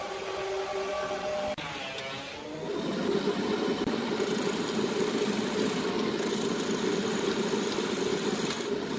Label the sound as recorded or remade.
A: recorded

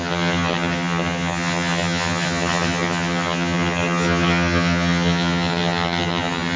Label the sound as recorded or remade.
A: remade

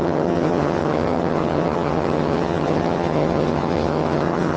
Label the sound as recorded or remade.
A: remade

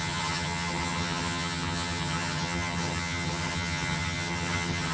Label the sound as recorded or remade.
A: remade